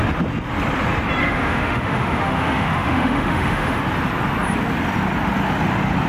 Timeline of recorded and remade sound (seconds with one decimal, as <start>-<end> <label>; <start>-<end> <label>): 0.0-1.2 recorded; 1.2-3.8 remade; 3.8-6.1 recorded